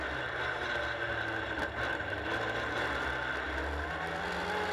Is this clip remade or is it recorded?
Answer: recorded